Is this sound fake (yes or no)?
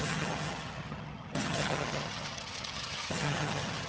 yes